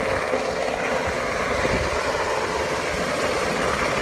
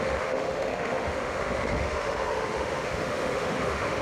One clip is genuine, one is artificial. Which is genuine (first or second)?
first